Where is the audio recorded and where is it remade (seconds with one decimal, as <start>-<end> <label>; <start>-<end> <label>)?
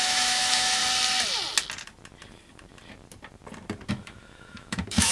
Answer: 0.0-0.8 remade; 0.8-3.9 recorded; 3.9-5.1 remade